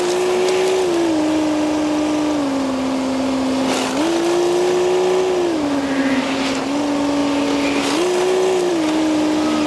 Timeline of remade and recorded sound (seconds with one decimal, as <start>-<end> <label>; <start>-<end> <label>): 0.0-9.7 recorded